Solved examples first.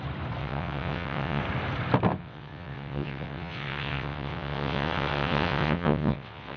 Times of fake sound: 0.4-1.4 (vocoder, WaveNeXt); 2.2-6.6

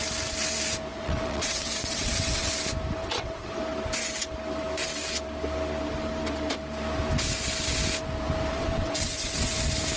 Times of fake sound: 0.9-2.5 (vocoder, WaveNeXt); 3.0-3.6; 8.5-9.5